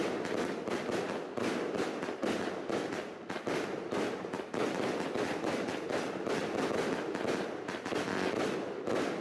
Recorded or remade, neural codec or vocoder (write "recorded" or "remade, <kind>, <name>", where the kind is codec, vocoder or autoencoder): recorded